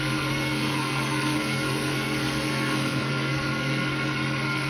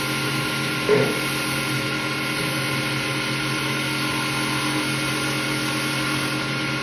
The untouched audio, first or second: second